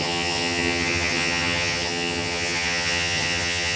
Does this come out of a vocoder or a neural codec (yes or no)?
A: yes